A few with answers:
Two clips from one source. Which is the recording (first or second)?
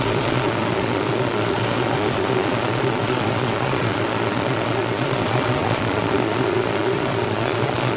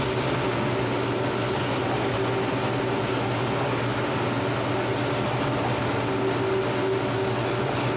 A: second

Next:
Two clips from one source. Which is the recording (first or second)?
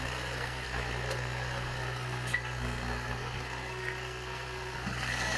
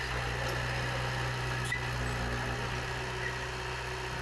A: second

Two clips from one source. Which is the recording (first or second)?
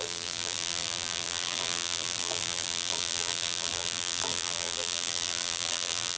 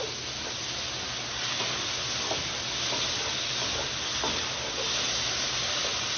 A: second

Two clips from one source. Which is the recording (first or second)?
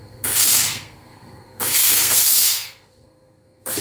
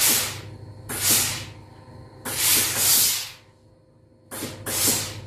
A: second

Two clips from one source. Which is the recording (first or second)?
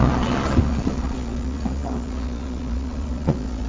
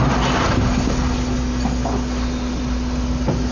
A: second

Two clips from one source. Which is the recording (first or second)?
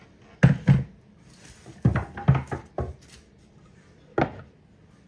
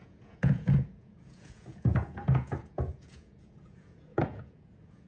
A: first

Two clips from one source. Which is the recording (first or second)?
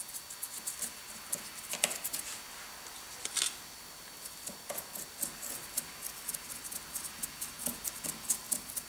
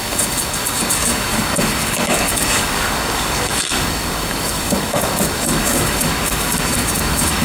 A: first